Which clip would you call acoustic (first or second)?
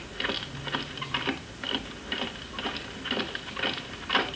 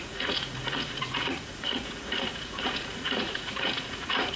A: first